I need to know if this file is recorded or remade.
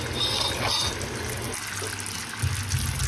recorded